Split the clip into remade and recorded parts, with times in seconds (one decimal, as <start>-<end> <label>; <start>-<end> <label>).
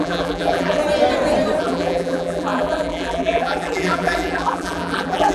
0.0-0.8 remade; 0.8-1.6 recorded; 1.6-5.3 remade